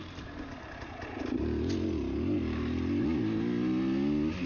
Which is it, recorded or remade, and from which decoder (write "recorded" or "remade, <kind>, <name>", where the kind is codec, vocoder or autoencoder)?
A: recorded